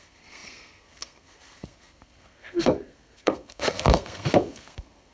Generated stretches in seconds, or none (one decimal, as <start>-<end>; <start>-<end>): 0.0-5.1